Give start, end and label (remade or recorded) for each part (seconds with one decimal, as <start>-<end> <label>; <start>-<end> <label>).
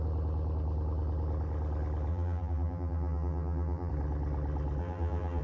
0.0-2.1 recorded; 2.1-3.9 remade; 3.9-4.8 recorded; 4.8-5.4 remade